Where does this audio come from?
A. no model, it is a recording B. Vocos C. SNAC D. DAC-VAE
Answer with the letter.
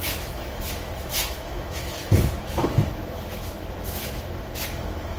D